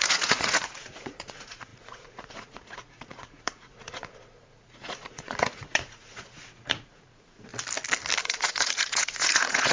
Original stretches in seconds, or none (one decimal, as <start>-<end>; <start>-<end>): 7.5-8.2